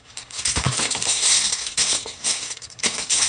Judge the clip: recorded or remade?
remade